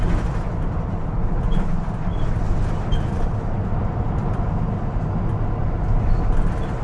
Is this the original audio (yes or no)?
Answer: yes